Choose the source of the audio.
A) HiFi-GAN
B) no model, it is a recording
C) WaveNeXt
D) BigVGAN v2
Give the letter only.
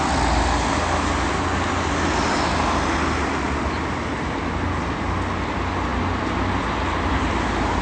B